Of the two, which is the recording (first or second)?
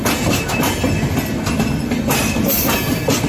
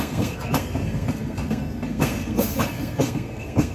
first